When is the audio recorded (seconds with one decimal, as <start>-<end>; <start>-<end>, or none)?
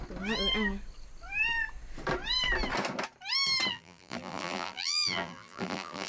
0.0-3.7